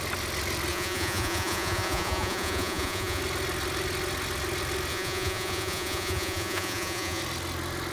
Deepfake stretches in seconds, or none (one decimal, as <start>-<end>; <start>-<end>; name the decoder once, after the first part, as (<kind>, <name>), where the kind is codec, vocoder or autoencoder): 0.7-3.2 (vocoder, Vocos); 4.9-7.2